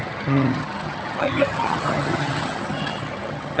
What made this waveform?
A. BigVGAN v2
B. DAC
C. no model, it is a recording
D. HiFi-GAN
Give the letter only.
D